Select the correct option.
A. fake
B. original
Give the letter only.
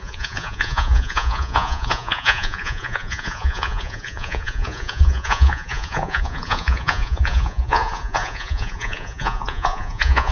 A